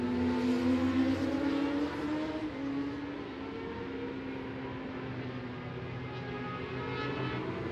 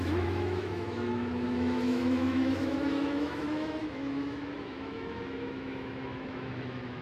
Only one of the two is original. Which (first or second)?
first